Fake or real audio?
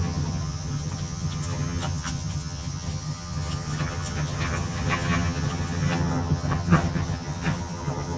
fake